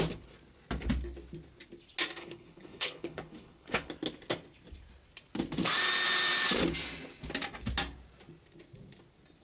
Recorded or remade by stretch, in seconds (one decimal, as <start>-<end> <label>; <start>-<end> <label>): 0.0-2.2 recorded; 2.2-3.9 remade; 3.9-9.4 recorded